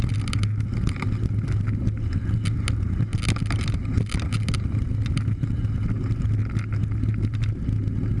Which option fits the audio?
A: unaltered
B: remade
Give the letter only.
A